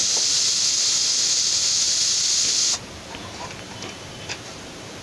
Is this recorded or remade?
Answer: recorded